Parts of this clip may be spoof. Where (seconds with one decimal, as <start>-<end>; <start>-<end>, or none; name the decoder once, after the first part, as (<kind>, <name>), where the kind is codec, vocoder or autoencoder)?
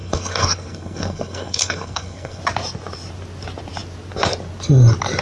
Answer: 0.0-2.4 (codec, SNAC)